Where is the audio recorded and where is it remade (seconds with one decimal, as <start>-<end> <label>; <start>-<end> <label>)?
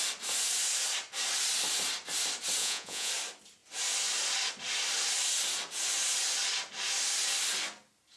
0.0-2.6 recorded; 2.6-3.1 remade; 3.1-8.2 recorded